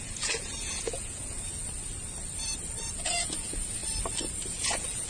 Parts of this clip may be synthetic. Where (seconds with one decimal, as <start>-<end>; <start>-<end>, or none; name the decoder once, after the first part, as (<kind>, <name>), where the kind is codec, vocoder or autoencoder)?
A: 0.0-1.5 (vocoder, Vocos); 2.9-3.8; 4.5-5.1